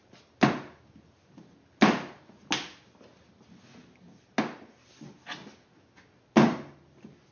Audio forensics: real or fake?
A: real